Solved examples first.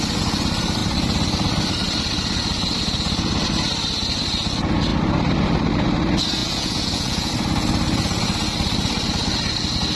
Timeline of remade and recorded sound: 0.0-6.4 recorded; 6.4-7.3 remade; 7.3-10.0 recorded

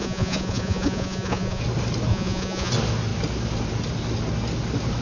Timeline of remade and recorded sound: 0.0-1.6 remade; 1.6-2.1 recorded; 2.1-2.7 remade; 2.7-5.0 recorded